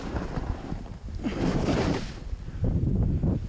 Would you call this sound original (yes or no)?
yes